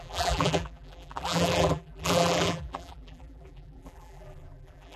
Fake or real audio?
fake